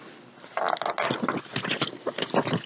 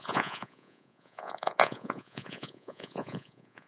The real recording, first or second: first